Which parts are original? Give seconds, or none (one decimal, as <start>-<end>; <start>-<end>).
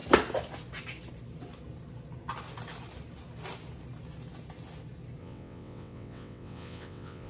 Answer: 0.0-5.2